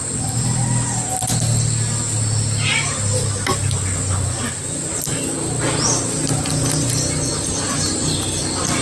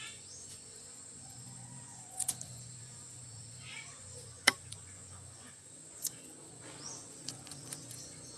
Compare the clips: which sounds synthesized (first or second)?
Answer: second